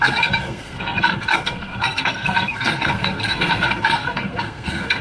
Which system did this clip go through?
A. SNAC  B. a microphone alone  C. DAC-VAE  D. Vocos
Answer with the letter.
A